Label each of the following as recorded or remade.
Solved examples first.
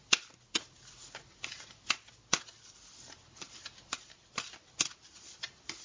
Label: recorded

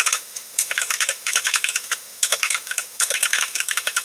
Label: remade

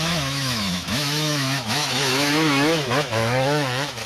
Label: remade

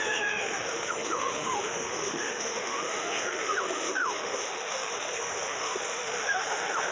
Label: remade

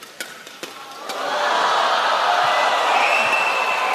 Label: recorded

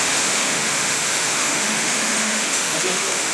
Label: remade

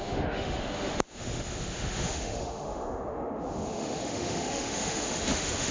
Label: remade